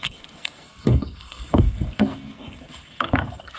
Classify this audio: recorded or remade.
remade